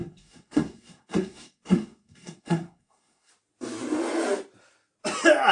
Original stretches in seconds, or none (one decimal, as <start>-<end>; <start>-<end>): 3.3-5.5